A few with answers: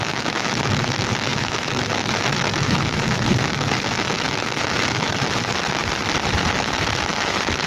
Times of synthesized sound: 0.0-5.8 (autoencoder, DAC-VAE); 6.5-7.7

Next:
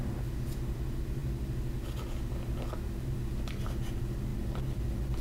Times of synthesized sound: none

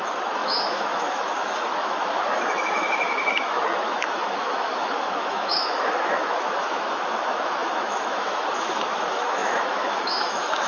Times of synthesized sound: 0.0-10.7 (autoencoder, DAC-VAE)

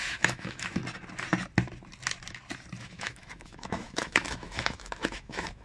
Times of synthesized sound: 0.0-0.8 (autoencoder, DAC-VAE); 2.8-5.6

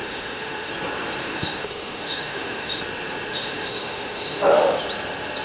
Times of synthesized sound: 0.0-0.7 (autoencoder, DAC-VAE); 1.2-2.8; 3.3-4.8